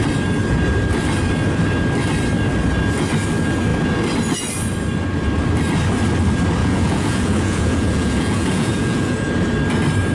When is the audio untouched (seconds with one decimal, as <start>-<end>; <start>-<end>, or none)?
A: 0.0-6.6; 9.3-10.1